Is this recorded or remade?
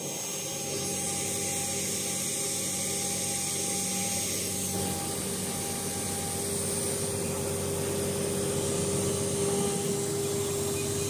recorded